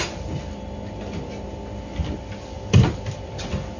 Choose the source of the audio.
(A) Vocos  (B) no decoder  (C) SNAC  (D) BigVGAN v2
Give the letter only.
B